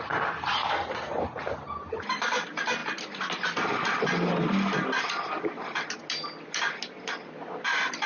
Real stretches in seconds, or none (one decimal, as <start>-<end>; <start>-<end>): 0.0-8.1